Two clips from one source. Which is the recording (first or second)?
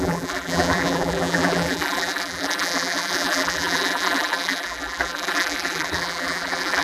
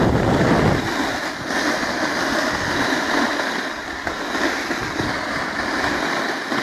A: second